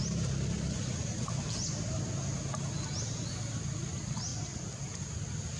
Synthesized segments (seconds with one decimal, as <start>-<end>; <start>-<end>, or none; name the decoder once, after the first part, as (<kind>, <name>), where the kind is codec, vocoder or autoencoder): none